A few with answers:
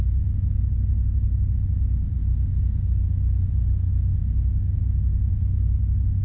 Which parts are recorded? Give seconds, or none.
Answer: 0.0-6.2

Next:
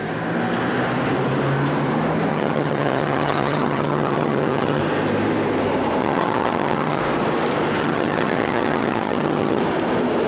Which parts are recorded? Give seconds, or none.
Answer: 0.0-2.3; 4.8-6.0; 7.0-7.8; 9.6-10.3